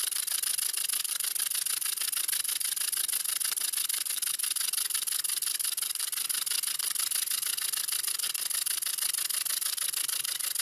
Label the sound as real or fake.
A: real